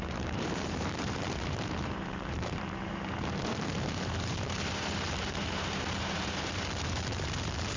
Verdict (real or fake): fake